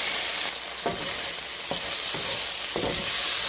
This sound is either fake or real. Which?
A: real